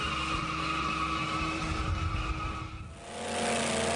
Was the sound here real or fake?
real